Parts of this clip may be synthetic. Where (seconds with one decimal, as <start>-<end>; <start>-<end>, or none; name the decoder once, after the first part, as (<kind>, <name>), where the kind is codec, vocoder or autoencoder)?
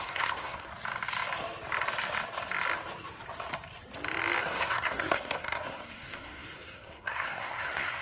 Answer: 0.0-0.7 (codec, SNAC); 4.4-8.0